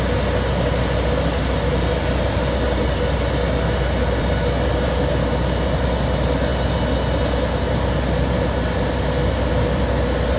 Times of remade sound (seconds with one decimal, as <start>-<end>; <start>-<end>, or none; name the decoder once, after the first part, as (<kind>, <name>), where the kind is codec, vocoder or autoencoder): none